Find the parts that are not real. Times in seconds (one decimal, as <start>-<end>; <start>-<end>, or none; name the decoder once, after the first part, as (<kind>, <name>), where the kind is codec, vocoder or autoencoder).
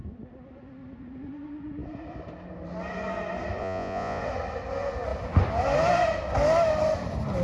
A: 3.6-4.2 (vocoder, Vocos)